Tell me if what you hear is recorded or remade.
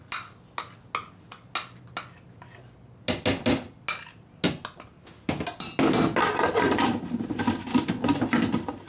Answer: recorded